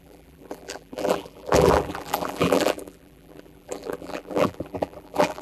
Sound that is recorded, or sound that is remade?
remade